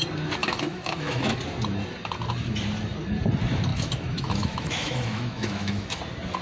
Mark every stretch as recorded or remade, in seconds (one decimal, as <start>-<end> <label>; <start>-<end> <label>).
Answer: 0.0-0.4 recorded; 0.4-1.4 remade; 1.4-3.7 recorded; 3.7-6.0 remade; 6.0-6.4 recorded